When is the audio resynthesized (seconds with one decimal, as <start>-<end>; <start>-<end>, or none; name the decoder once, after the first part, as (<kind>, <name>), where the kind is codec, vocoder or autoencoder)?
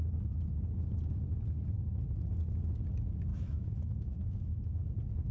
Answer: 3.3-4.5 (autoencoder, DAC-VAE)